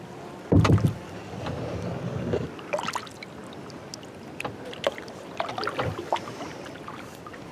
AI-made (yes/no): no